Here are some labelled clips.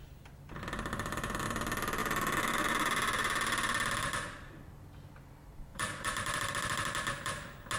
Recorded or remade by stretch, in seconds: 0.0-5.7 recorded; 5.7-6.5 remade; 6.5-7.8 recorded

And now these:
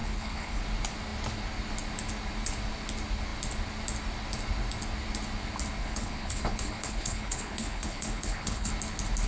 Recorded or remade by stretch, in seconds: 0.0-0.6 remade; 0.6-5.8 recorded; 5.8-8.7 remade; 8.7-9.3 recorded

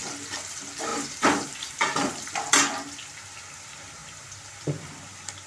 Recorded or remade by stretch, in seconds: 0.0-0.9 recorded; 0.9-2.3 remade; 2.3-4.0 recorded; 4.0-4.9 remade; 4.9-5.5 recorded

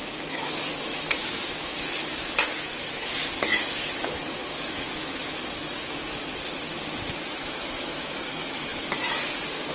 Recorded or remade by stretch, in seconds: 0.0-6.7 remade; 6.7-7.3 recorded; 7.3-8.7 remade; 8.7-9.7 recorded

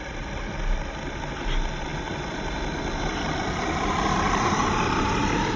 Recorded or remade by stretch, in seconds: 0.0-5.6 recorded